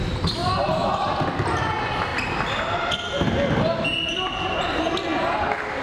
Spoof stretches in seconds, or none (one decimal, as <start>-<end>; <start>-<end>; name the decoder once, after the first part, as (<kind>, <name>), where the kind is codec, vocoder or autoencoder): 0.4-1.1 (vocoder, BigVGAN v2)